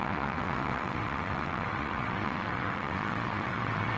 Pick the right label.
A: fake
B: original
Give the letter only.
A